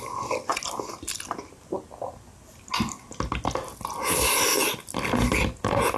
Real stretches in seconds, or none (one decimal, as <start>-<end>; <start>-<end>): 0.0-6.0